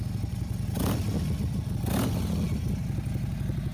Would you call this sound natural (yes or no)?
yes